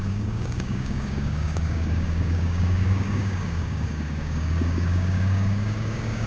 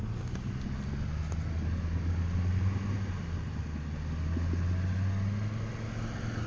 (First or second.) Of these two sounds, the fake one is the first